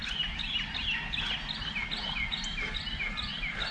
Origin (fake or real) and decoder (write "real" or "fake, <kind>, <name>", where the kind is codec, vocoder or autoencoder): real